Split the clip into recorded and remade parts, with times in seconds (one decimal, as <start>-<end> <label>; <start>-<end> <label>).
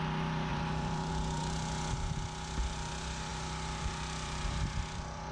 0.0-0.5 recorded; 0.5-1.1 remade; 1.1-3.3 recorded; 3.3-5.3 remade